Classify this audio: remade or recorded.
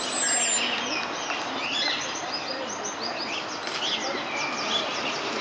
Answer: recorded